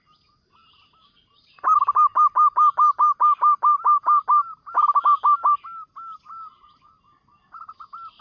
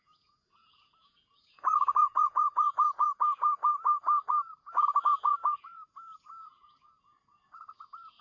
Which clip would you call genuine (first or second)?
first